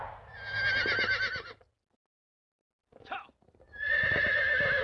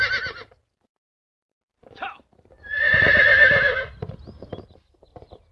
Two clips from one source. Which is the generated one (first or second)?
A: second